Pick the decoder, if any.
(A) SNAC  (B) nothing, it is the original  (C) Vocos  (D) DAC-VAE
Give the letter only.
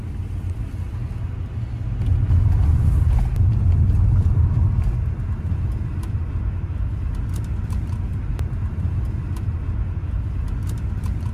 B